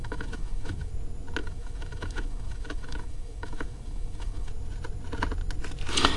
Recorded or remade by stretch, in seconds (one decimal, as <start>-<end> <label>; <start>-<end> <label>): 0.0-0.9 remade; 0.9-1.4 recorded; 1.4-4.5 remade; 4.5-6.2 recorded